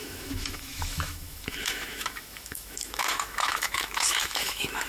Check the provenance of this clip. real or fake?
fake